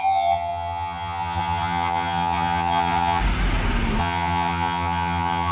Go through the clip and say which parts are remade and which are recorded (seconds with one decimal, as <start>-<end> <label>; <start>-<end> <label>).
0.0-3.2 remade; 3.2-4.0 recorded; 4.0-5.5 remade